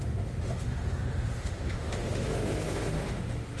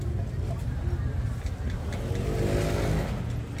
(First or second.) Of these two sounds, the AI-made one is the first